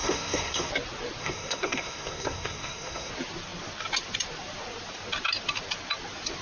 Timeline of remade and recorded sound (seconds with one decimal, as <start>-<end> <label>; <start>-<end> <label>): 0.0-0.7 remade; 0.7-1.2 recorded; 1.2-3.1 remade; 3.1-6.4 recorded